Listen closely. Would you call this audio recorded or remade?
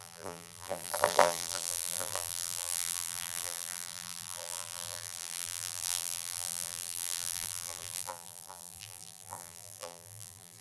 remade